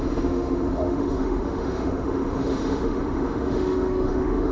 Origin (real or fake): fake